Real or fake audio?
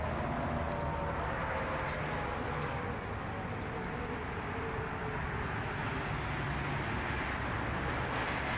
real